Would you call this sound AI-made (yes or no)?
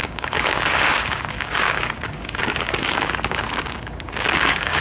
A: yes